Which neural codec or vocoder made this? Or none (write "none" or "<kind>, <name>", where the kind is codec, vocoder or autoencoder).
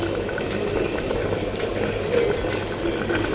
none